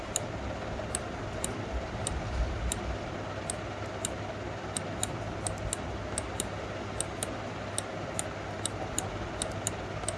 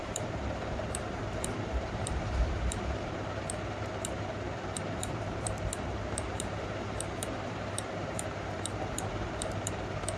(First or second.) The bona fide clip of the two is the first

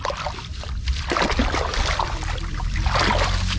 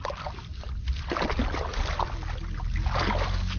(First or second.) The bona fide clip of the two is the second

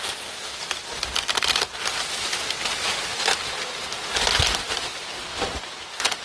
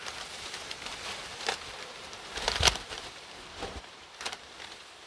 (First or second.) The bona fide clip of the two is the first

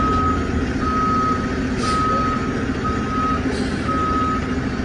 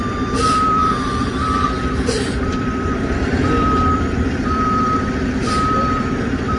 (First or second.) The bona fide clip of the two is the first